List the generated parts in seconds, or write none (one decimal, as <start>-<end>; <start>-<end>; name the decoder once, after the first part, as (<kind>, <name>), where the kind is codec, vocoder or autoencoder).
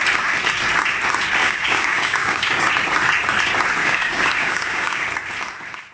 1.4-2.7 (codec, DAC); 3.8-5.0